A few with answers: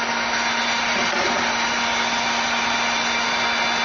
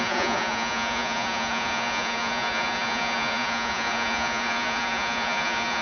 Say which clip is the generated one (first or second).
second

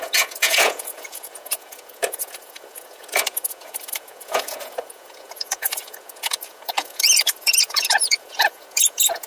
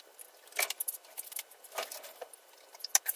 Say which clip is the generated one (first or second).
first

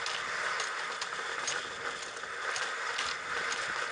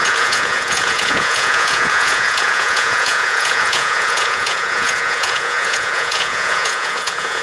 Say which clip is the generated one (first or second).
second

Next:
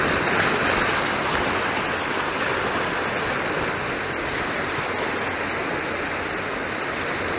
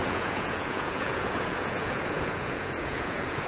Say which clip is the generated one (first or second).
second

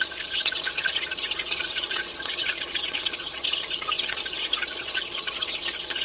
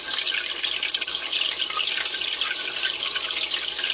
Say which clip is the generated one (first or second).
first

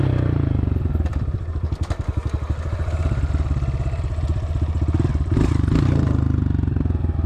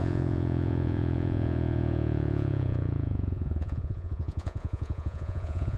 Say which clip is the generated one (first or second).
second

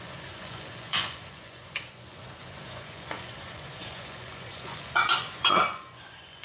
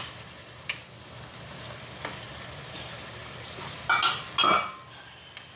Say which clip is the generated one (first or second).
first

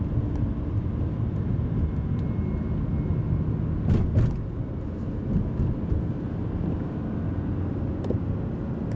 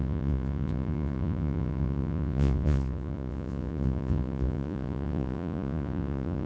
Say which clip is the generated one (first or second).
second